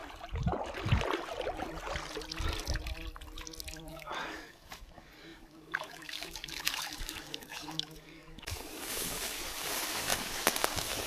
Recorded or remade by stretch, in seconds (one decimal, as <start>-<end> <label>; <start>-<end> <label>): 0.0-3.9 recorded; 3.9-11.1 remade